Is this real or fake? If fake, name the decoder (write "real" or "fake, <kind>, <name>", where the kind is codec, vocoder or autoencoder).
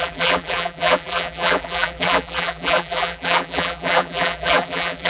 fake, vocoder, BigVGAN v2